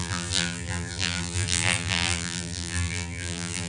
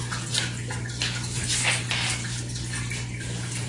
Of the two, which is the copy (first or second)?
first